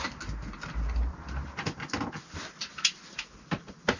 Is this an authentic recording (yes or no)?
yes